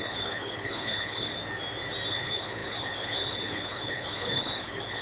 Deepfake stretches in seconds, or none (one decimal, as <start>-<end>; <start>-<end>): 0.0-1.3; 2.1-5.0